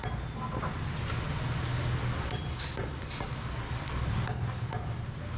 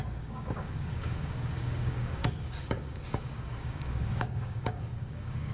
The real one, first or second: first